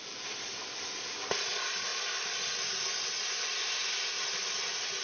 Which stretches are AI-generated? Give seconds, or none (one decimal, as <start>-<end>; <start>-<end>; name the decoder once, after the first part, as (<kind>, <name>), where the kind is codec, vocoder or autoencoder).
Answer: none